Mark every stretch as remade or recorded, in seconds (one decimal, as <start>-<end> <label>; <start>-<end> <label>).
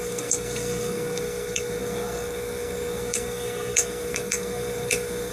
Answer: 0.0-5.3 remade